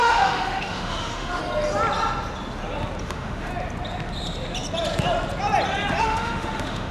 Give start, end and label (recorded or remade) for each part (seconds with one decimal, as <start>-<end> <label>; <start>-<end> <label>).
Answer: 0.0-1.4 remade; 1.4-3.0 recorded; 3.0-3.5 remade; 3.5-6.0 recorded; 6.0-6.9 remade